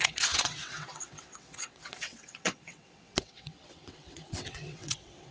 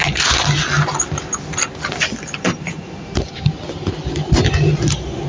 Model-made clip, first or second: first